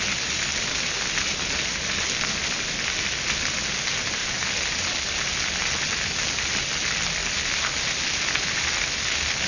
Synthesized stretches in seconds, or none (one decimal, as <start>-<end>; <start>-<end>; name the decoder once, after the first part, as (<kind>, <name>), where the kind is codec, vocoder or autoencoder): none